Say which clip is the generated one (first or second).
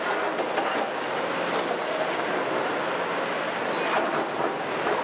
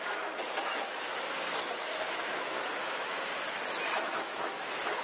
second